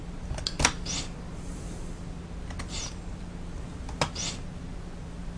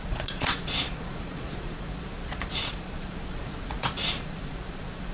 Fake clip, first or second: second